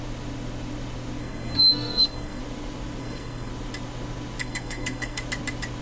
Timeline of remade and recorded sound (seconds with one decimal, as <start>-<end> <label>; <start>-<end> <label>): 0.0-1.2 recorded; 1.2-2.4 remade; 2.4-3.0 recorded; 3.0-3.5 remade; 3.5-4.4 recorded; 4.4-5.2 remade; 5.2-5.8 recorded